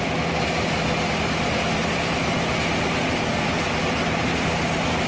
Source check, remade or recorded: recorded